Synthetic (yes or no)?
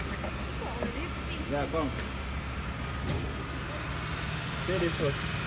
no